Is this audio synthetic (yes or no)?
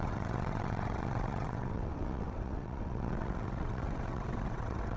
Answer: yes